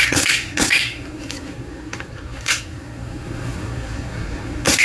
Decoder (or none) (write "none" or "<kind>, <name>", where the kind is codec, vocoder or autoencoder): codec, SNAC